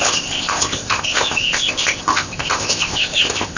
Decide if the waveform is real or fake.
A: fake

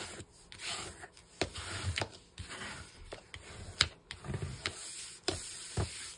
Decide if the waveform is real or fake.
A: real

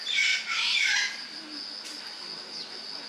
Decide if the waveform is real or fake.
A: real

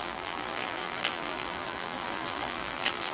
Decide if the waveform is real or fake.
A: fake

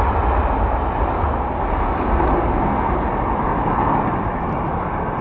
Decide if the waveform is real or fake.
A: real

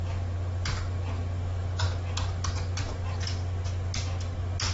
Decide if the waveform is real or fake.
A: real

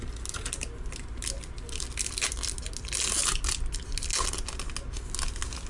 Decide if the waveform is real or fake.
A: real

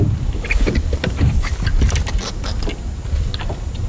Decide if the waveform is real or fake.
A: real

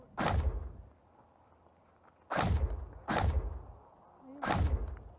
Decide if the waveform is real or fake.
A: real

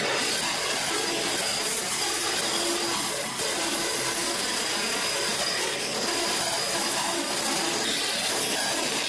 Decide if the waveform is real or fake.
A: real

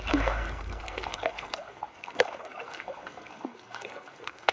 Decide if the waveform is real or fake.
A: fake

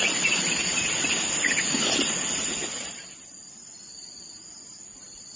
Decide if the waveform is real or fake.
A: real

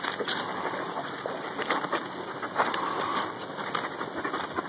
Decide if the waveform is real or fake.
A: real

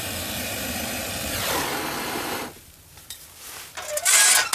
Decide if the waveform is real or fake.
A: real